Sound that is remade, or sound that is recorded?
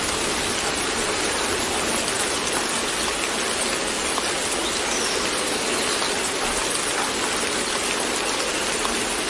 recorded